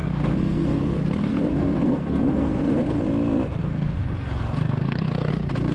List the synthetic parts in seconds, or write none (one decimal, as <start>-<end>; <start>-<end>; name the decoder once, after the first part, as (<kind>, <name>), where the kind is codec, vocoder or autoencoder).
0.0-3.0 (codec, SNAC); 3.6-5.3